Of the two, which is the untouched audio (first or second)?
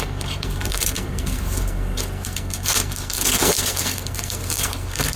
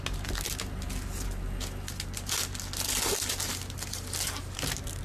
second